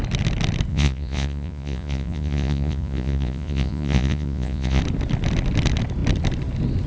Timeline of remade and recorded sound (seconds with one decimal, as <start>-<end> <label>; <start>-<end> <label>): 0.0-0.7 recorded; 0.7-4.8 remade; 4.8-6.9 recorded